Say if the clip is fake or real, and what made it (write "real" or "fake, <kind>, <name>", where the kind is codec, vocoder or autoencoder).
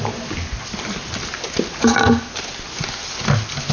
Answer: real